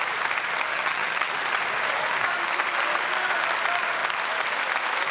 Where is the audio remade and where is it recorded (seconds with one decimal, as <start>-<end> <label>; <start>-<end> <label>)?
0.0-0.7 recorded; 0.7-1.3 remade; 1.3-5.1 recorded